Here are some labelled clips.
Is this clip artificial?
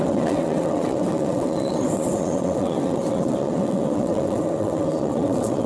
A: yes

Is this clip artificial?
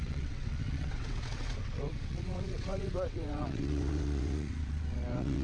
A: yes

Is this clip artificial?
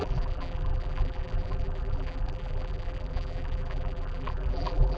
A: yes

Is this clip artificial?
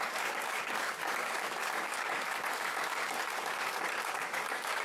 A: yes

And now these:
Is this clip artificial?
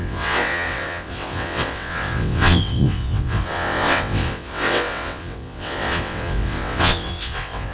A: yes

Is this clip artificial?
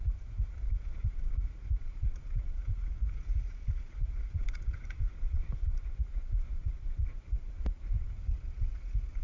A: yes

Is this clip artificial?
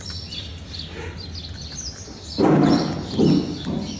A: no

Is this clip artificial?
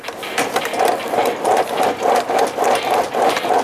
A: no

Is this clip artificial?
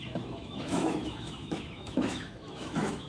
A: yes